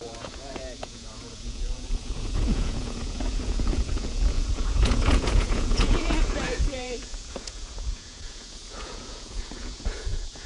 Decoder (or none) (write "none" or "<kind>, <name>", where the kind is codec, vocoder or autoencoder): vocoder, Vocos